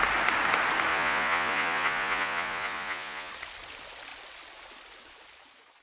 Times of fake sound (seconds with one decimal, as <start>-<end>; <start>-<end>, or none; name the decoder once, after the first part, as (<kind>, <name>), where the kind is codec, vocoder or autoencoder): 0.9-3.3 (vocoder, Vocos)